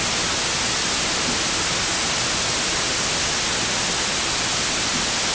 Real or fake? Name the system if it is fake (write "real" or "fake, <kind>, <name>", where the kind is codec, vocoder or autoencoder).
real